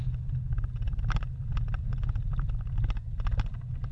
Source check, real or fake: real